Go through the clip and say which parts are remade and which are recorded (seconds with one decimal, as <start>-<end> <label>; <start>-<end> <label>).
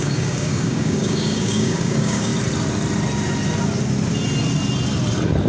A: 0.0-2.3 remade; 2.3-5.5 recorded